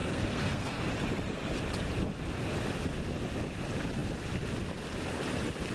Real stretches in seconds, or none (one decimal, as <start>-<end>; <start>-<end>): 0.9-5.7